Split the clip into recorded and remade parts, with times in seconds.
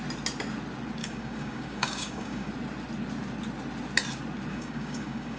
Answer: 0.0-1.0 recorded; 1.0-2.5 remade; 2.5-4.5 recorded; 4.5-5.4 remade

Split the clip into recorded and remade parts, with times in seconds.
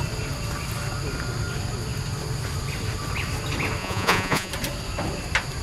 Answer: 0.0-3.8 recorded; 3.8-4.5 remade; 4.5-5.6 recorded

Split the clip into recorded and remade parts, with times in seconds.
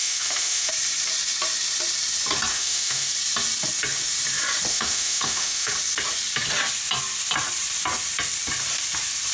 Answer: 0.0-0.7 remade; 0.7-2.5 recorded; 2.5-3.1 remade; 3.1-4.7 recorded; 4.7-5.7 remade; 5.7-9.3 recorded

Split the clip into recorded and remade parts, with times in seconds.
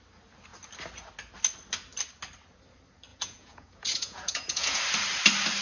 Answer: 0.0-3.1 recorded; 3.1-4.8 remade; 4.8-5.6 recorded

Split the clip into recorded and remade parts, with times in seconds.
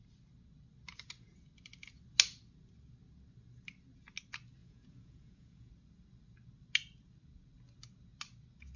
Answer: 0.0-4.6 recorded; 4.6-5.7 remade; 5.7-8.8 recorded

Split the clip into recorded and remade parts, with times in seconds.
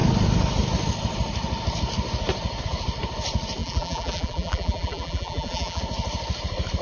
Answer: 0.0-3.6 recorded; 3.6-5.8 remade; 5.8-6.8 recorded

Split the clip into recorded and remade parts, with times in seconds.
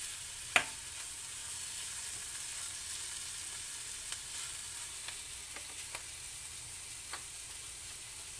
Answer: 0.0-8.4 recorded